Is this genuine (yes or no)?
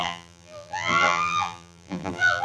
no